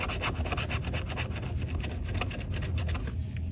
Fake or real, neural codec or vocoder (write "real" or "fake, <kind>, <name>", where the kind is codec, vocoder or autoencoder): real